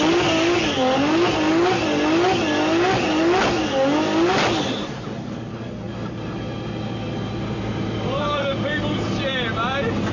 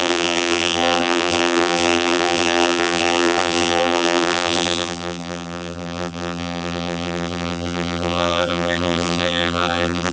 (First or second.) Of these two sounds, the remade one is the second